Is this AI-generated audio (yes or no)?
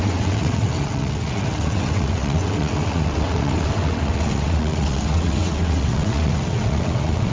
yes